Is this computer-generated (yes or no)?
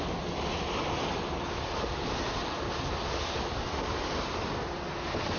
no